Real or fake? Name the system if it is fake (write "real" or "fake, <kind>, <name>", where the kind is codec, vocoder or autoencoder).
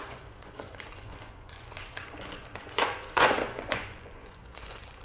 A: fake, vocoder, Vocos